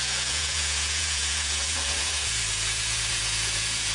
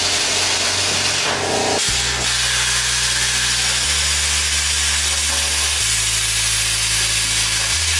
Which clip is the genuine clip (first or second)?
second